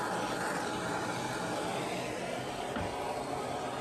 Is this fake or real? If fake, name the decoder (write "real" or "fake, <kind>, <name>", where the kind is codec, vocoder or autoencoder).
real